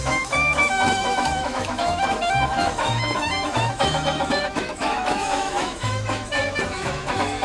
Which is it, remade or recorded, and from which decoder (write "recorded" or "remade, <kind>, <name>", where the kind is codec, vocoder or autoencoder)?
remade, autoencoder, DAC-VAE